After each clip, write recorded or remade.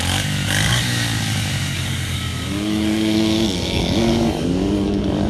remade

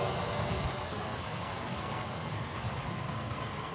remade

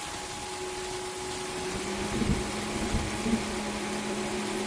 recorded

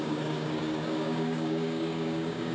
remade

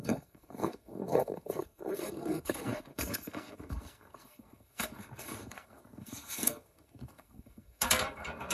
remade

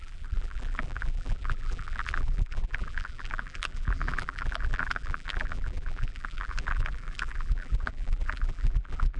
remade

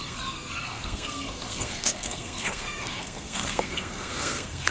remade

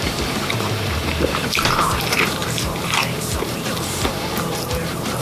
remade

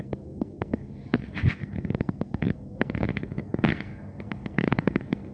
remade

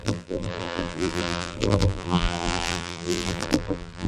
remade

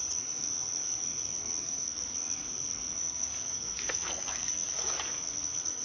remade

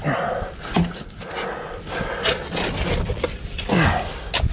recorded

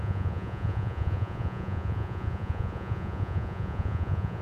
remade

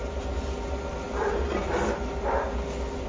recorded